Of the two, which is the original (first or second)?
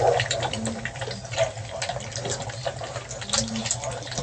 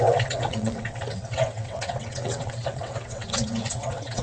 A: first